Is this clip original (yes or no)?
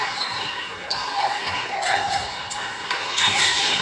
no